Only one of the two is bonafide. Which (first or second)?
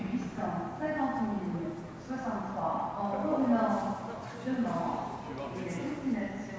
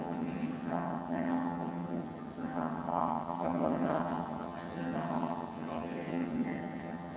first